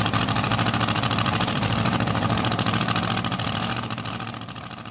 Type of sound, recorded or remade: remade